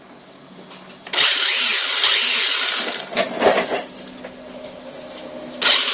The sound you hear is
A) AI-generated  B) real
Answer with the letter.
B